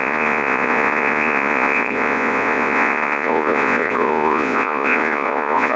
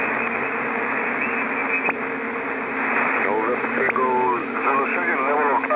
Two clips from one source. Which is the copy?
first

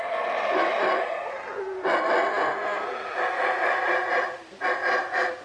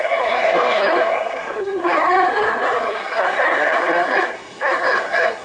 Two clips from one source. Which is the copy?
second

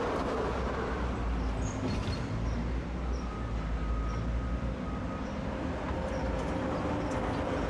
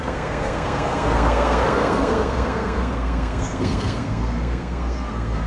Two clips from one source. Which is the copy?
second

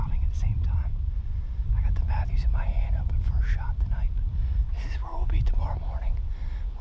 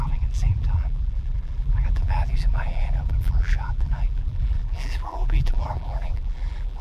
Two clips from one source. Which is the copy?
second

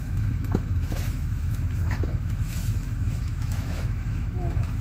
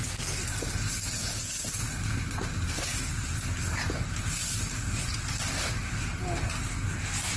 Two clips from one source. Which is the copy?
first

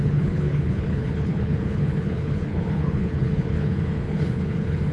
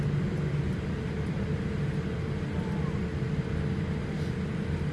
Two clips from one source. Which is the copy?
first